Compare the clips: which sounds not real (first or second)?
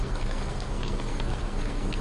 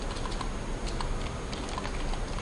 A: first